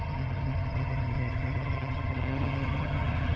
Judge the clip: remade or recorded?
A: remade